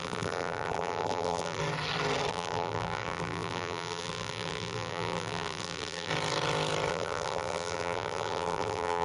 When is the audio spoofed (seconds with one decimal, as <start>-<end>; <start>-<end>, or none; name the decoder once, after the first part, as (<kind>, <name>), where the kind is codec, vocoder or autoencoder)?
0.0-1.6 (vocoder, BigVGAN v2); 2.3-6.1; 6.9-9.0